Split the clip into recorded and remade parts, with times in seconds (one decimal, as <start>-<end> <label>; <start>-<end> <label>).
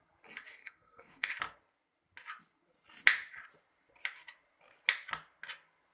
0.0-0.6 recorded; 0.6-1.3 remade; 1.3-5.9 recorded